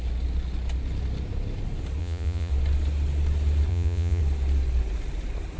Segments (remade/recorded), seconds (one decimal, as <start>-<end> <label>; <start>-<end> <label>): 0.0-2.0 recorded; 2.0-2.5 remade; 2.5-3.7 recorded; 3.7-4.2 remade; 4.2-5.6 recorded